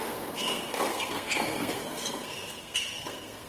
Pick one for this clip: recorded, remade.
remade